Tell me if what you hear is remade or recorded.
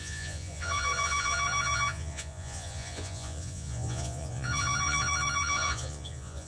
remade